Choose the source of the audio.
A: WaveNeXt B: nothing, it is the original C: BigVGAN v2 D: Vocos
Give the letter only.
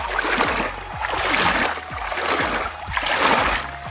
B